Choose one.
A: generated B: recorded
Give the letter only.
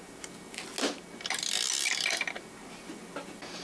B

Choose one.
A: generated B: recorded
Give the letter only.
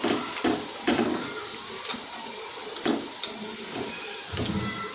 B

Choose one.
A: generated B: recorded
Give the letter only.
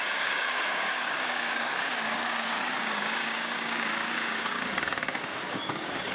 A